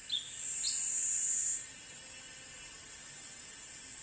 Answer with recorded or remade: recorded